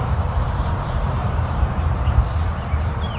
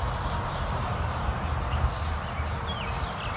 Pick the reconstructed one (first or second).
first